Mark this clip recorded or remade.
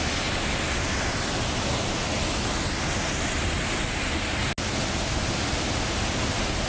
recorded